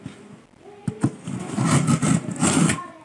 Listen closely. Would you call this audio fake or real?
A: real